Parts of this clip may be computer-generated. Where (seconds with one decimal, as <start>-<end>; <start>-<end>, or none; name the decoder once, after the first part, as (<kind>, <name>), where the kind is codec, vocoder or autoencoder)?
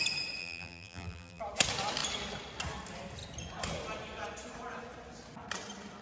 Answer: 0.4-1.4 (vocoder, BigVGAN v2)